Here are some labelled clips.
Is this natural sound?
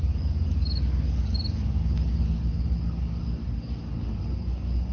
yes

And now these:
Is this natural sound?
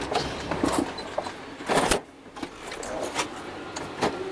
yes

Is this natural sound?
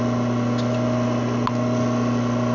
yes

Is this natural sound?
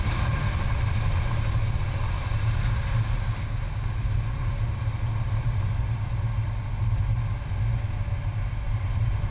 yes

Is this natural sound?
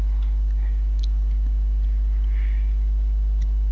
yes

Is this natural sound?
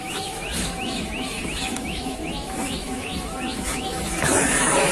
no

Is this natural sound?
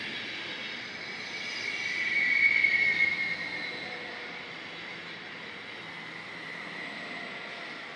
yes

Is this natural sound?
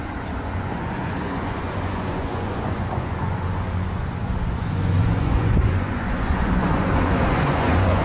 no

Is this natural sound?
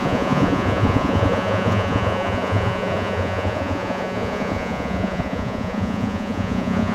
no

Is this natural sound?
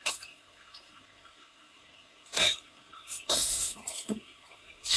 no